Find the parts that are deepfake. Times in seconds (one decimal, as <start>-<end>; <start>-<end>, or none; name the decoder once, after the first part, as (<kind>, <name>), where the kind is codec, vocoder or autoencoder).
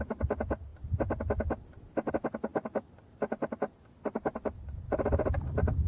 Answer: none